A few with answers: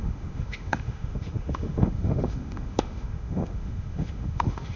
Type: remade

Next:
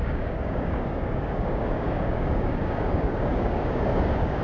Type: remade